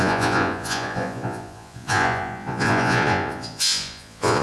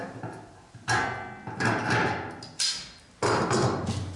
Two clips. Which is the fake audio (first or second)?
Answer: first